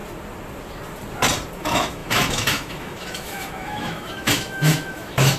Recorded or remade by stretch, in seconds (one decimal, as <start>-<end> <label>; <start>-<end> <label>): 0.0-1.6 recorded; 1.6-5.4 remade